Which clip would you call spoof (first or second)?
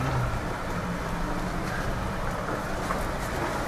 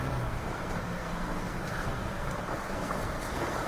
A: second